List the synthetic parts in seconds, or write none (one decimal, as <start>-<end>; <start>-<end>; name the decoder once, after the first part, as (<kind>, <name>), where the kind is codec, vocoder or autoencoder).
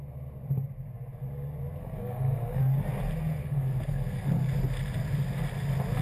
1.8-2.6 (codec, SNAC); 3.4-4.5